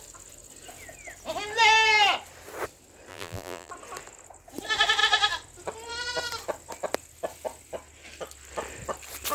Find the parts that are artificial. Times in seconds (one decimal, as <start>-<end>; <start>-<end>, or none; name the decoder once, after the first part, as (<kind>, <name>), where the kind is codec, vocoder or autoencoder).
3.1-3.7 (vocoder, BigVGAN v2)